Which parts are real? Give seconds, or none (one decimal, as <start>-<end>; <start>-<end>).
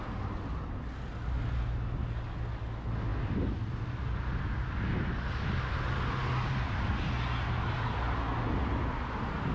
0.0-6.2; 6.9-9.5